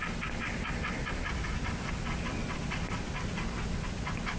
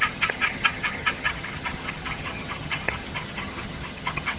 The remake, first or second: second